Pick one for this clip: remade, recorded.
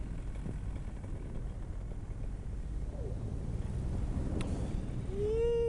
recorded